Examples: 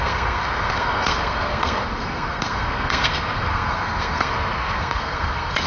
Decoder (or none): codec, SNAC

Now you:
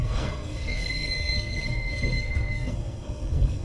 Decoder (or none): codec, SNAC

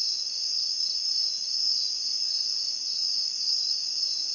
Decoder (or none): none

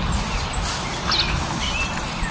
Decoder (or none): none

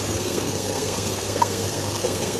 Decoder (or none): codec, SNAC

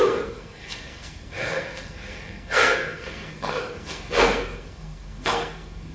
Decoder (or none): codec, SNAC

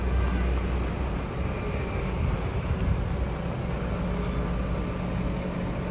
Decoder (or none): none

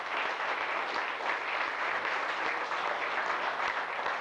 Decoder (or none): none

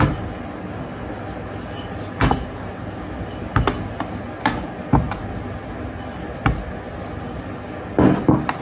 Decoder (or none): none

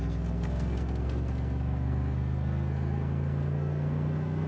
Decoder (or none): codec, SNAC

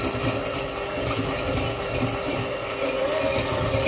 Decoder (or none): none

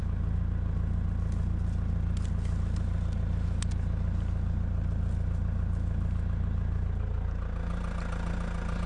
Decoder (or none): none